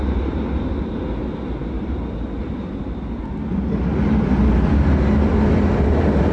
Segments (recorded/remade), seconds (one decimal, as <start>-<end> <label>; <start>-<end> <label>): 0.0-1.6 recorded; 1.6-3.2 remade; 3.2-6.3 recorded